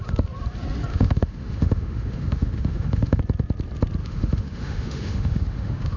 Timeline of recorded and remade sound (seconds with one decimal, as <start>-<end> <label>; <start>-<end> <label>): 0.0-0.9 recorded; 0.9-3.2 remade; 3.2-4.0 recorded; 4.0-6.0 remade

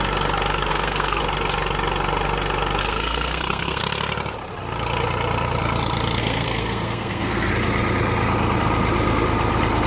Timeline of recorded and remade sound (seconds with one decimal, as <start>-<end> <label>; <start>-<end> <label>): 0.0-0.7 recorded; 0.7-1.2 remade; 1.2-2.8 recorded; 2.8-3.8 remade; 3.8-6.2 recorded; 6.2-7.5 remade; 7.5-9.9 recorded

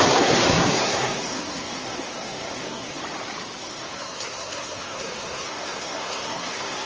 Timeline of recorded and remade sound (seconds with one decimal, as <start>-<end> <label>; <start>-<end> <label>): 0.0-3.0 remade; 3.0-3.6 recorded; 3.6-6.9 remade